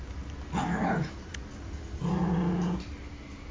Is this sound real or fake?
real